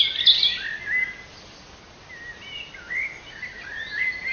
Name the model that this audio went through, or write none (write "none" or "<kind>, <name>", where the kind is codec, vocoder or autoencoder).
none